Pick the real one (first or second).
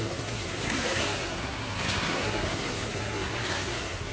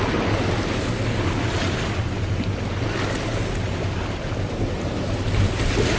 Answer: second